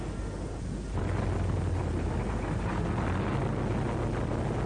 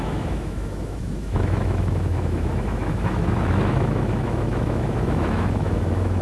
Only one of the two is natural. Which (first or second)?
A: first